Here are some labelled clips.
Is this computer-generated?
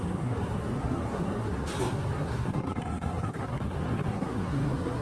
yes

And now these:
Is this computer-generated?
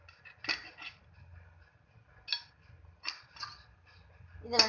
no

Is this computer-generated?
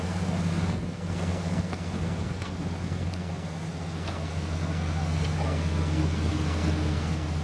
yes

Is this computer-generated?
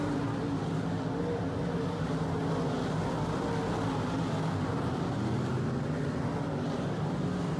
no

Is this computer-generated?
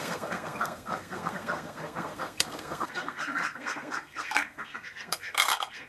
yes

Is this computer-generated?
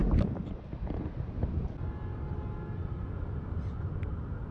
no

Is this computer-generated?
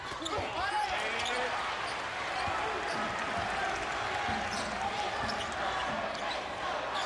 no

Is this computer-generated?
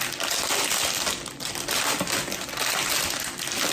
no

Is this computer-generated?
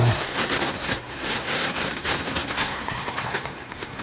yes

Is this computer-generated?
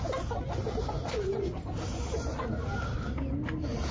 no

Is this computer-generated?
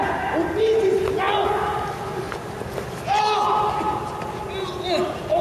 no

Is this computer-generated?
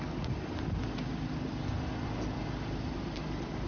no